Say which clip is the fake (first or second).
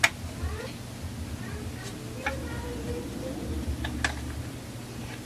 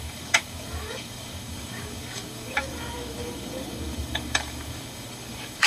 second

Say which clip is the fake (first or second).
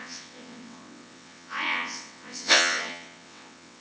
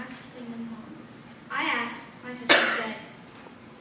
first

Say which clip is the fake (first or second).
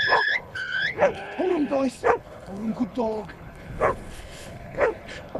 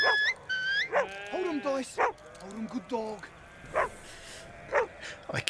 first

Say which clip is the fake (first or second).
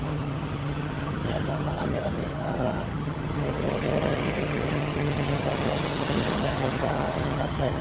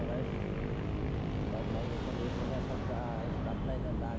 first